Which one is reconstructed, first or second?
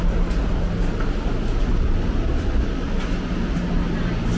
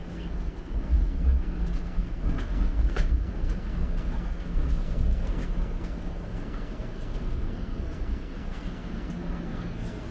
second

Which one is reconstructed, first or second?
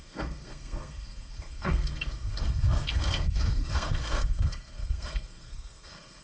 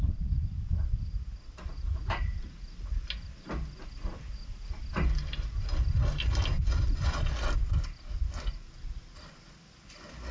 first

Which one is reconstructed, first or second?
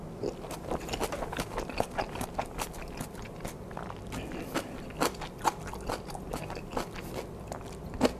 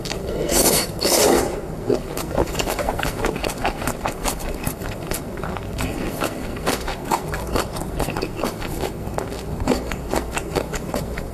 second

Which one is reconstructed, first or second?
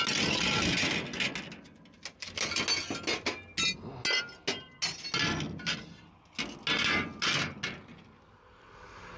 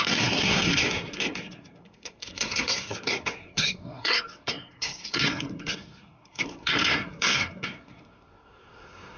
second